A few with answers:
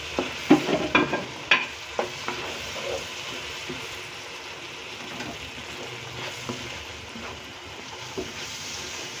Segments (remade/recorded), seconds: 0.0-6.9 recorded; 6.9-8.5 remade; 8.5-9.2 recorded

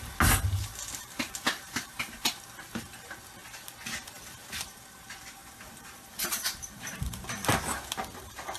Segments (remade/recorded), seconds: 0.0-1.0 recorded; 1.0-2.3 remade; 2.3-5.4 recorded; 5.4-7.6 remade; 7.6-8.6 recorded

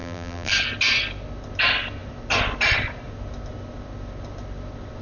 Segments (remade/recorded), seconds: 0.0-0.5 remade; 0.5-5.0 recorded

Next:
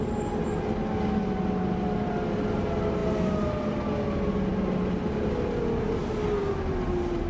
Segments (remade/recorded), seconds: 0.0-7.3 recorded

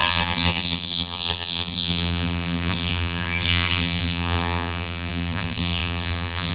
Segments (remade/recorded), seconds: 0.0-6.5 remade

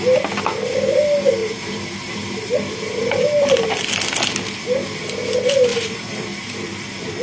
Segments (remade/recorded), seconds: 0.0-1.4 recorded; 1.4-3.9 remade; 3.9-5.7 recorded; 5.7-7.2 remade